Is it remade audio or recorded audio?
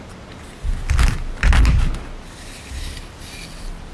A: recorded